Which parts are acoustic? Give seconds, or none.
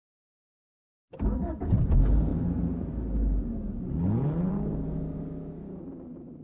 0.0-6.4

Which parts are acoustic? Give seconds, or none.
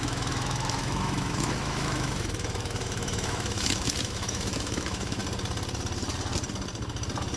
5.2-7.4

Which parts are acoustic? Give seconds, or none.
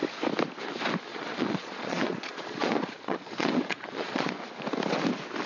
0.0-1.1; 4.4-5.5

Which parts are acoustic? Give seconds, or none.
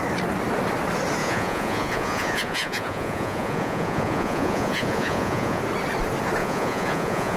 0.0-1.2; 5.6-6.4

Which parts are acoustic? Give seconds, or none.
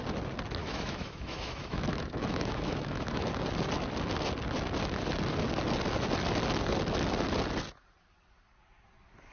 0.0-0.6; 3.3-9.3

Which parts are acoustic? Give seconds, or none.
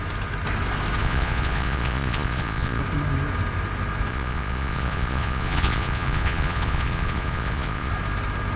0.0-1.0; 2.8-4.1; 7.9-8.6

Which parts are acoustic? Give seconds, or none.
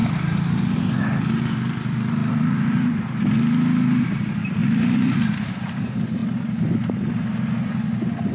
1.0-2.2; 3.0-4.6; 5.7-8.3